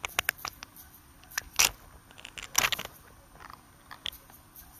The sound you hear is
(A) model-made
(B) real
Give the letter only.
B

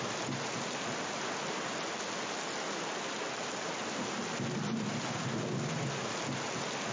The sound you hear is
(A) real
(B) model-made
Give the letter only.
A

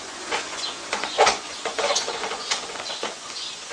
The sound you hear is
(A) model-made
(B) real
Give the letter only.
A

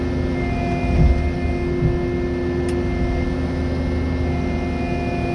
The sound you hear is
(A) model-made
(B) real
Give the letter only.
B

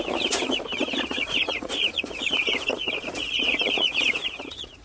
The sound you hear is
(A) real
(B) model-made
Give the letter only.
B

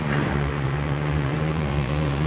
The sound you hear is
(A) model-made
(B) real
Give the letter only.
A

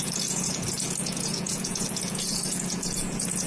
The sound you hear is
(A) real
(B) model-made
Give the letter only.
B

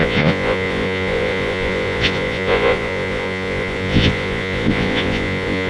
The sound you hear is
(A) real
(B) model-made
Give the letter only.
B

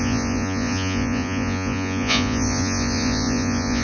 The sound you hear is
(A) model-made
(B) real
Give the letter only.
A